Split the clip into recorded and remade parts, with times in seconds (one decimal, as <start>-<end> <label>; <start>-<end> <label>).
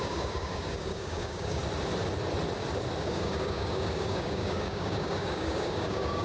0.0-1.6 remade; 1.6-3.0 recorded; 3.0-6.2 remade